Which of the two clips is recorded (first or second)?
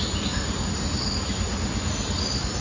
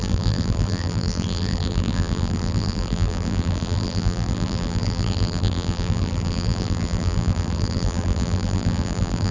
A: first